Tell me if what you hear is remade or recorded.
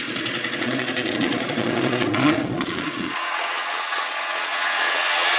remade